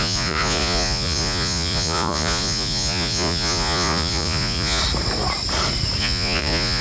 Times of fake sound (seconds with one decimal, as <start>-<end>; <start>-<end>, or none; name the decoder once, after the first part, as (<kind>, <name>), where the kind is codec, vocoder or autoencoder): 0.0-4.8 (vocoder, Vocos); 6.0-6.8